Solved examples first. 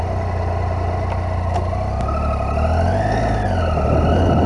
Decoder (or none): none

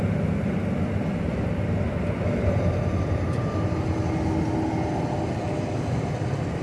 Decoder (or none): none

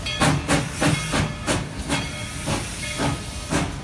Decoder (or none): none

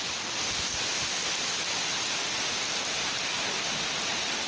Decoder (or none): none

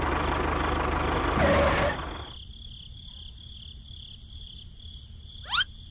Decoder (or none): none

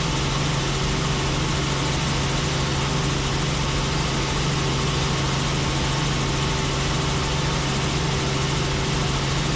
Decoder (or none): none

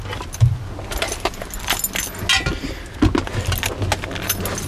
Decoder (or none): none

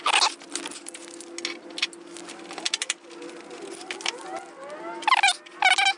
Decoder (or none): none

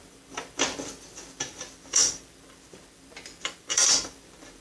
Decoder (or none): vocoder, BigVGAN v2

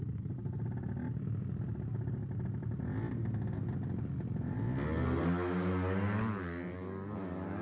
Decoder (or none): none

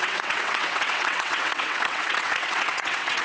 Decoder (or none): vocoder, WaveNeXt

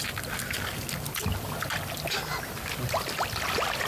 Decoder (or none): none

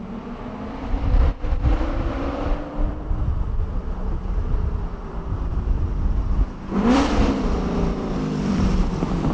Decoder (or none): vocoder, BigVGAN v2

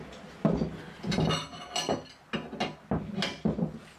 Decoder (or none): none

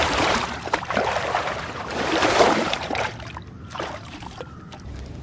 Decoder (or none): vocoder, BigVGAN v2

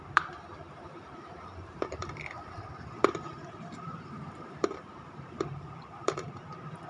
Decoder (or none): vocoder, BigVGAN v2